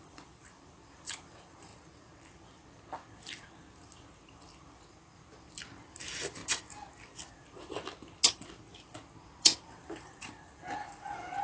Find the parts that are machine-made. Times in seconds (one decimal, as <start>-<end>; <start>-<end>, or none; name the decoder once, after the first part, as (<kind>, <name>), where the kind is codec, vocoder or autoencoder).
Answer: 0.0-1.7 (vocoder, BigVGAN v2); 6.0-6.4; 9.4-11.4